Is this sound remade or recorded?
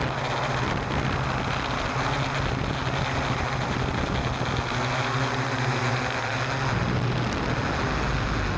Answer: recorded